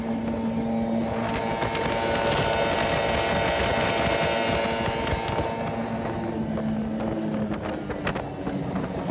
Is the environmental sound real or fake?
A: real